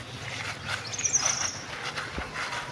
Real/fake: real